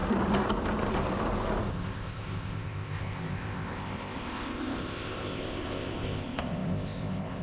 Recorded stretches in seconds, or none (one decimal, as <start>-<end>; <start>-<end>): 0.0-1.7